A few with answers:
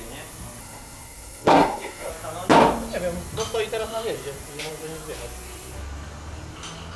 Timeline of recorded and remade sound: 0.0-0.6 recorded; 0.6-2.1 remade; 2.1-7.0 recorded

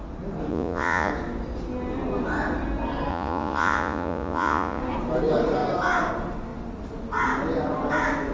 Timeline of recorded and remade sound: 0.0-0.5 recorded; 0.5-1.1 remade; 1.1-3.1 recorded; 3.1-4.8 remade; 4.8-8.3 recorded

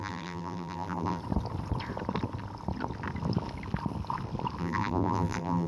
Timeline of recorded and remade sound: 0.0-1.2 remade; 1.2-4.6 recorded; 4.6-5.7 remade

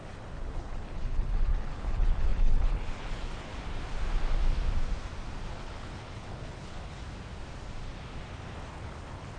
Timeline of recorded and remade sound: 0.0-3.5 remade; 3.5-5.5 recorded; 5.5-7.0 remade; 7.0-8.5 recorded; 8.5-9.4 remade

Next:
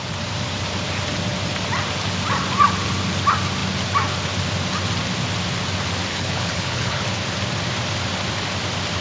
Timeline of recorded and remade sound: 0.0-6.1 recorded; 6.1-7.0 remade; 7.0-9.0 recorded

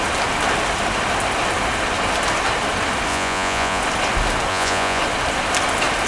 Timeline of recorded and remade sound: 0.0-3.1 recorded; 3.1-3.8 remade; 3.8-4.5 recorded; 4.5-5.0 remade; 5.0-6.1 recorded